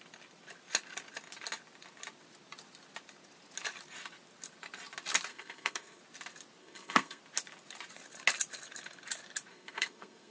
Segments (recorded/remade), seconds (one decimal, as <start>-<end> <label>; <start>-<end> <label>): 0.0-5.3 recorded; 5.3-6.0 remade; 6.0-6.6 recorded; 6.6-7.2 remade; 7.2-9.5 recorded; 9.5-10.3 remade